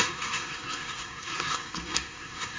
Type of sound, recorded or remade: remade